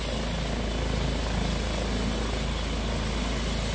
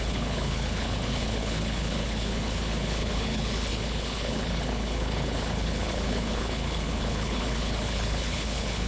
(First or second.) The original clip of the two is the first